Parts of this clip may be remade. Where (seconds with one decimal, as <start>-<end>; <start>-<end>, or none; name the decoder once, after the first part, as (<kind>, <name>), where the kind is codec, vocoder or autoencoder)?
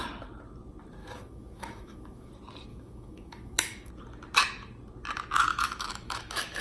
1.0-2.3 (autoencoder, DAC-VAE); 2.7-3.9; 5.5-6.6